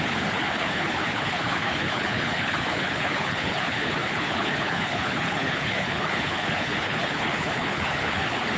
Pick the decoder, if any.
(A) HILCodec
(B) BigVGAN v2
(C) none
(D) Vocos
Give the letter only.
A